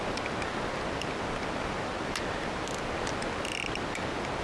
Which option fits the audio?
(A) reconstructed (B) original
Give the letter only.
B